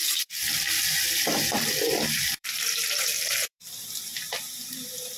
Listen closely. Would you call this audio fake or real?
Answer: fake